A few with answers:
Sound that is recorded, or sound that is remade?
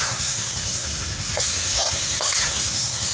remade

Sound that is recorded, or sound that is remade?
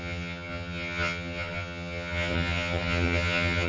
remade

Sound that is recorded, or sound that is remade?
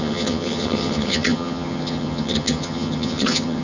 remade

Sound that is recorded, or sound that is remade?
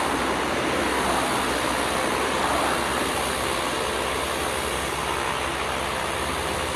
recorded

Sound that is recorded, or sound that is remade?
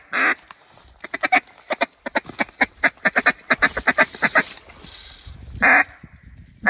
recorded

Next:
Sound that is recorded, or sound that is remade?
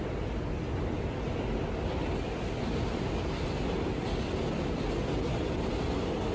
recorded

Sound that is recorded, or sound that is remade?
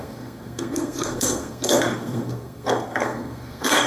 remade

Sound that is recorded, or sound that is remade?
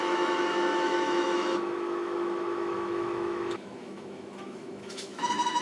remade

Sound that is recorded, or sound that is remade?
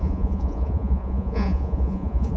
remade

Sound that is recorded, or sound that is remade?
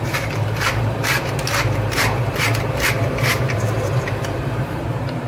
remade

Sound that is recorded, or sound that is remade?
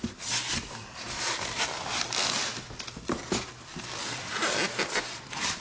recorded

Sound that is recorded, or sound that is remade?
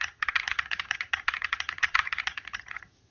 remade